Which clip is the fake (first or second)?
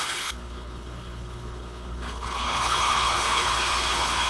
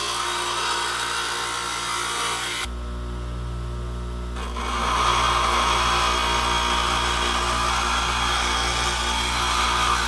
first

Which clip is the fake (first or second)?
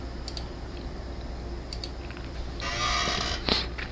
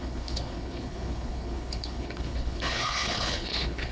second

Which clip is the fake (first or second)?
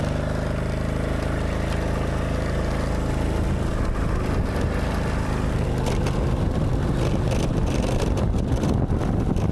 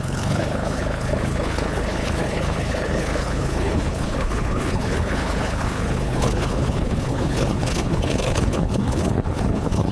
second